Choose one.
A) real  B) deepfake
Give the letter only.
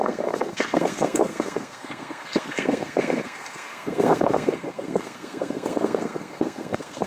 B